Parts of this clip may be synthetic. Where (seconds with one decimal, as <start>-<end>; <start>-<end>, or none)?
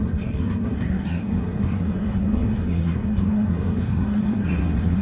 0.0-5.0